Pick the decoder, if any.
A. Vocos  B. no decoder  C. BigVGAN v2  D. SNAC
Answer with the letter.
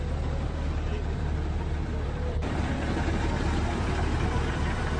C